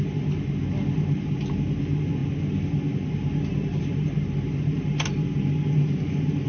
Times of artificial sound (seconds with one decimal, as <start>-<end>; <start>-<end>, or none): none